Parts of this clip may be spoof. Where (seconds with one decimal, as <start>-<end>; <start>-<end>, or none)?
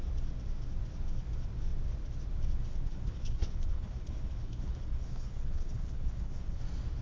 2.7-6.6